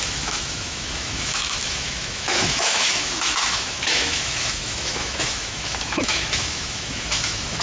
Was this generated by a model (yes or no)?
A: yes